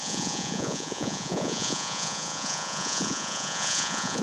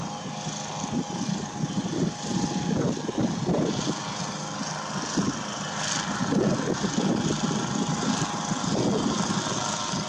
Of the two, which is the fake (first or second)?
first